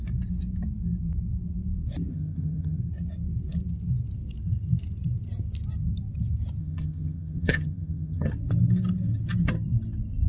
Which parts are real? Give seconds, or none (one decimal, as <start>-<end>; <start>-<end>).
0.0-2.1; 2.8-6.6; 8.3-10.3

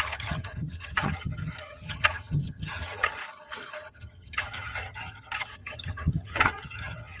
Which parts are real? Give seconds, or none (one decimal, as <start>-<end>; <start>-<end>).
3.2-3.9

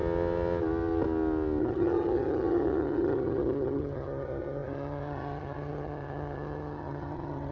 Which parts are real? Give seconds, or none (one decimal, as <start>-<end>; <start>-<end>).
0.0-1.6